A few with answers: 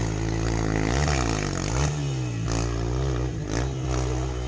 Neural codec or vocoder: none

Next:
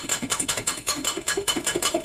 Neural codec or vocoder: autoencoder, DAC-VAE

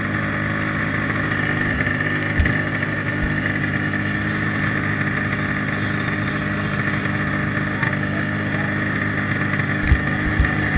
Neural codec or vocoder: none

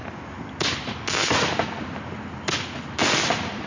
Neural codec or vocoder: none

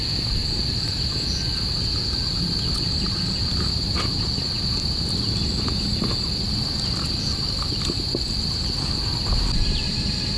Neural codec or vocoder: none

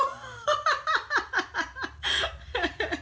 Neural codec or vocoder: none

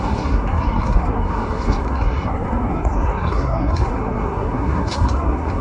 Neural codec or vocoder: codec, SNAC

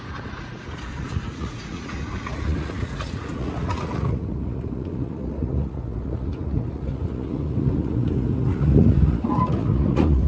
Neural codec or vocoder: vocoder, Vocos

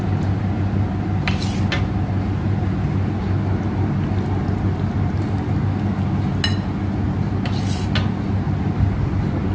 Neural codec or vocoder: none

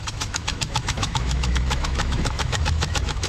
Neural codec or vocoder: autoencoder, DAC-VAE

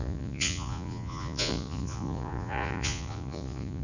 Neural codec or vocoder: vocoder, Vocos